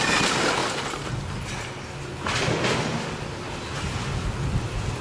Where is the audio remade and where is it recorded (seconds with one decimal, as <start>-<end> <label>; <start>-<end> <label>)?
0.0-5.0 recorded